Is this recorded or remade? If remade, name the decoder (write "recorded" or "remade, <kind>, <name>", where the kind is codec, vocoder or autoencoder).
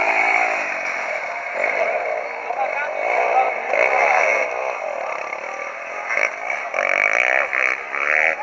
recorded